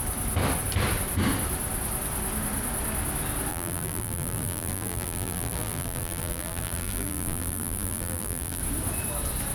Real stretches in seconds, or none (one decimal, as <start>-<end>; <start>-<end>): 0.0-3.5; 8.6-9.5